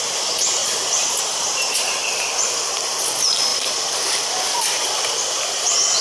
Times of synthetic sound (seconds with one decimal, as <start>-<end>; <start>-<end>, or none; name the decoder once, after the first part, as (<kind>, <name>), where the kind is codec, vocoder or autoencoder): 0.6-2.0 (vocoder, BigVGAN v2)